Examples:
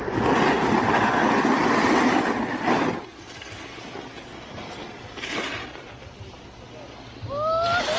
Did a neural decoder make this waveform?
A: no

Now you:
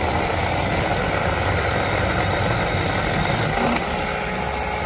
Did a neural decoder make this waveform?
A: no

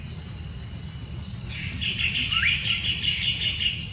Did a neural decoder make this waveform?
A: no